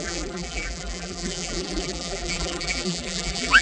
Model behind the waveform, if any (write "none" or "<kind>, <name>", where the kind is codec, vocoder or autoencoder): vocoder, BigVGAN v2